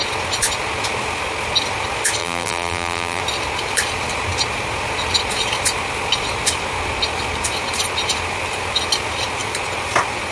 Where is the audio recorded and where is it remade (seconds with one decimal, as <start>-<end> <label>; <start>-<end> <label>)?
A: 0.0-2.2 recorded; 2.2-3.2 remade; 3.2-10.3 recorded